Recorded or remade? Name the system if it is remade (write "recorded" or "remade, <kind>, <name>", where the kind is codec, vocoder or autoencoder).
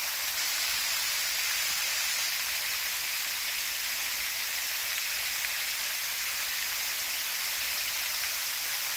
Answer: recorded